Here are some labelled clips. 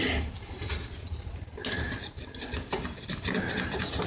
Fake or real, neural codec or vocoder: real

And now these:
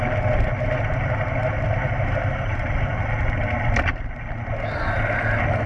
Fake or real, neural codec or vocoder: real